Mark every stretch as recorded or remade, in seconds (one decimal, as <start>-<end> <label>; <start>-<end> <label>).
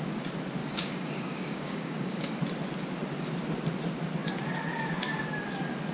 0.0-0.6 recorded; 0.6-2.4 remade; 2.4-5.9 recorded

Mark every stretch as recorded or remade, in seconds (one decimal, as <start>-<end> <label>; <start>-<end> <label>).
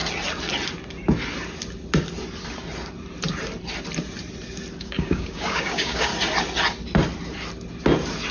0.0-4.8 recorded; 4.8-6.1 remade; 6.1-8.3 recorded